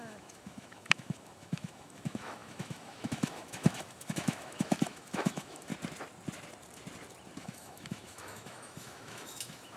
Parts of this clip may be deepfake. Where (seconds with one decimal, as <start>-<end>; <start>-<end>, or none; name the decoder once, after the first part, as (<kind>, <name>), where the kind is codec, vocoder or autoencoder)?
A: 0.0-5.7 (autoencoder, DAC-VAE); 7.4-9.8